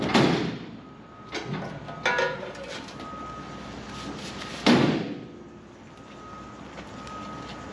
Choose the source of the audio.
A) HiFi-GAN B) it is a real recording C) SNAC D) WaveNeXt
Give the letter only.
B